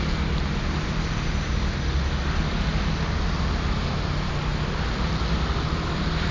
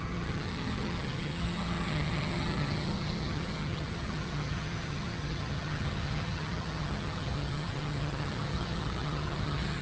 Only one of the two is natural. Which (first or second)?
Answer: first